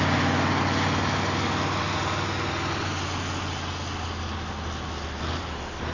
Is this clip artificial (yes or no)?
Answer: no